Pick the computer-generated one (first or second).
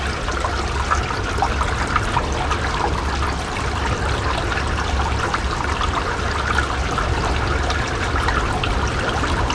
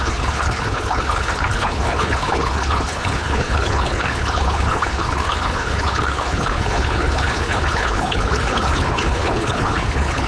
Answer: second